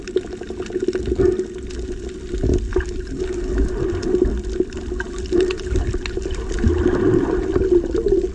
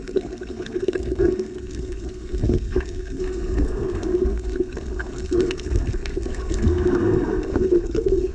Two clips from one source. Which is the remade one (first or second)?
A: second